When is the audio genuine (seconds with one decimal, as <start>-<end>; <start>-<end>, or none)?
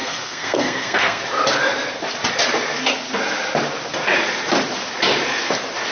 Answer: 1.2-5.9